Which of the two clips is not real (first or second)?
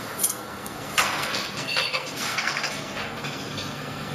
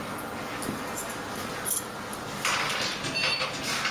first